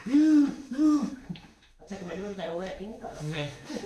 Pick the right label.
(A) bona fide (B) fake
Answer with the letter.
B